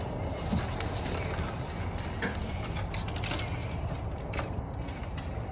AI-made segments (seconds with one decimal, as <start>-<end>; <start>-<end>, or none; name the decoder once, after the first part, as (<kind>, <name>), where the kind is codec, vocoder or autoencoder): 2.4-3.1 (vocoder, BigVGAN v2); 3.6-4.6